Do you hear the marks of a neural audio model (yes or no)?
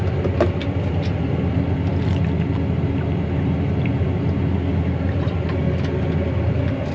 no